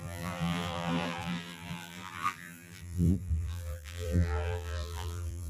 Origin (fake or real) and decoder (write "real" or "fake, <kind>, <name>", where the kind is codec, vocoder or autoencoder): fake, vocoder, BigVGAN v2